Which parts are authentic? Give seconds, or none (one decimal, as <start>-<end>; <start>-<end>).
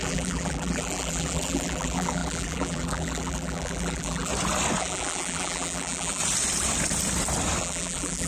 4.3-4.8; 6.2-7.6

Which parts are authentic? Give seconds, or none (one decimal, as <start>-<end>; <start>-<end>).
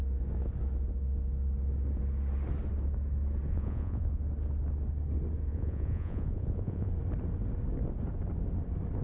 0.0-3.5; 4.2-5.5; 6.9-9.0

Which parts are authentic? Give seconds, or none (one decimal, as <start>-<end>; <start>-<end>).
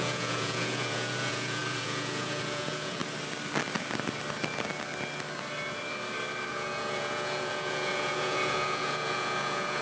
3.0-6.5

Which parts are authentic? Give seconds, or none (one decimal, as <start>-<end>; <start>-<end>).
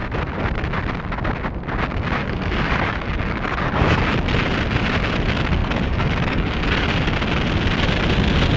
0.0-2.2; 4.0-5.6; 6.9-8.6